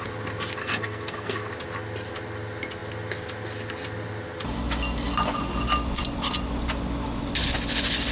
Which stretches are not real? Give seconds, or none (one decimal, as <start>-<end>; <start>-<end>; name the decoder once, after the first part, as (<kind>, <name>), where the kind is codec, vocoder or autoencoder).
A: 0.6-1.5 (codec, SNAC)